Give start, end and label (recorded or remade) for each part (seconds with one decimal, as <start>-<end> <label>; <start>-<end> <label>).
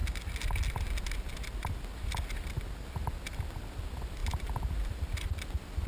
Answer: 0.0-5.9 recorded